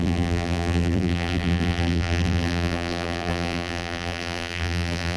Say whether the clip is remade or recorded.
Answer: remade